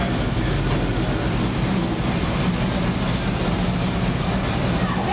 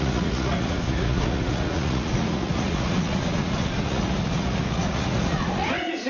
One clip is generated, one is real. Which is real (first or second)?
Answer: first